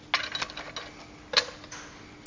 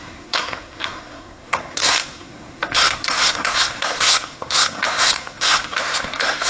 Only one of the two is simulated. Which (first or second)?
second